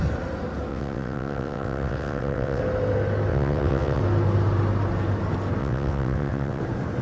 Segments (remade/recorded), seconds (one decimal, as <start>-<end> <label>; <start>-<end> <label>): 0.0-0.7 recorded; 0.7-2.6 remade; 2.6-3.3 recorded; 3.3-4.0 remade; 4.0-5.6 recorded; 5.6-6.6 remade; 6.6-7.0 recorded